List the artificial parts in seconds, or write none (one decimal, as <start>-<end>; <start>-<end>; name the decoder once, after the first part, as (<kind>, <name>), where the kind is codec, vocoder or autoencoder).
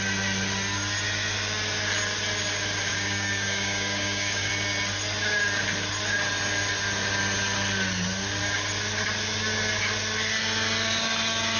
2.9-4.5 (codec, DAC)